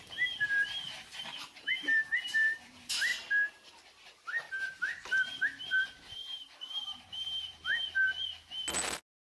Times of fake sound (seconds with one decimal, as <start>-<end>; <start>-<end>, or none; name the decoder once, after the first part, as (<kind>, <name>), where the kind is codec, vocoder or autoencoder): 0.0-3.1 (vocoder, BigVGAN v2); 4.5-7.8